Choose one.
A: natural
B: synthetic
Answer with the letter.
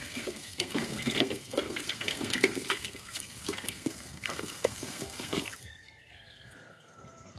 B